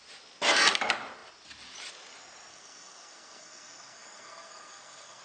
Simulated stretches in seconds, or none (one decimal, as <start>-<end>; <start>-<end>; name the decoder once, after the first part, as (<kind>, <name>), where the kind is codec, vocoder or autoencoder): 2.5-5.2 (codec, SNAC)